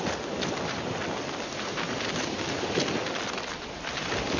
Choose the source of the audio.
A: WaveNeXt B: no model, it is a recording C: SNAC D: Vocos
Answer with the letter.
B